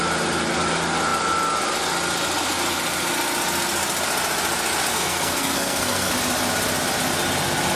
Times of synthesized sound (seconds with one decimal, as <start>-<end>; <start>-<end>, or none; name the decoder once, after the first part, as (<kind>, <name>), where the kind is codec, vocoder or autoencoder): 4.9-6.1 (codec, SNAC)

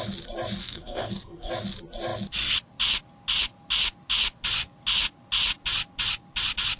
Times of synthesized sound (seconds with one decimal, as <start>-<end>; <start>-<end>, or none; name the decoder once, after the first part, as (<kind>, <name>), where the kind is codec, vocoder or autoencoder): 0.6-1.5 (codec, SNAC)

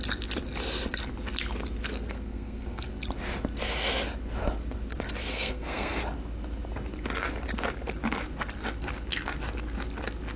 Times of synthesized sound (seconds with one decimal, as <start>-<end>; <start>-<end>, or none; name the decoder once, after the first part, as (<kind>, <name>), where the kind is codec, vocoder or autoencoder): 1.9-2.9 (codec, SNAC); 5.3-6.0

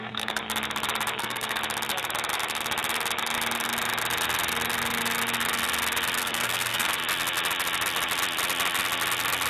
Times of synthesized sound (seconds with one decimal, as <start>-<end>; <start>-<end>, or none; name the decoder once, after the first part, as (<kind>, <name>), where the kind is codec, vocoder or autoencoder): 0.0-0.4 (codec, SNAC); 1.2-1.6; 6.2-7.0

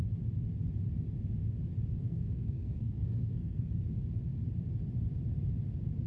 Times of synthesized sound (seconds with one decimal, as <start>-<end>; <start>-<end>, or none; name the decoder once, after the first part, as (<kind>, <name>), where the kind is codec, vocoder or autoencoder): 2.0-3.7 (codec, SNAC)

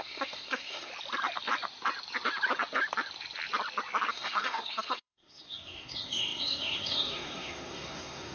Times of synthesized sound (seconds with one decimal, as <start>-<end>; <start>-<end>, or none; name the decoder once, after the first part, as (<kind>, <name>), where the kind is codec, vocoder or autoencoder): 0.0-0.9 (codec, SNAC); 4.1-8.3

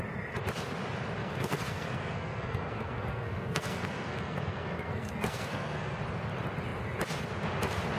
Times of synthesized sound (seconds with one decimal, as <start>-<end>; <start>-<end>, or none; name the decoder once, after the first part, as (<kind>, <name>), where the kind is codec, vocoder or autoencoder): 1.2-6.0 (codec, SNAC)